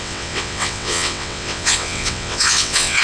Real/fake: fake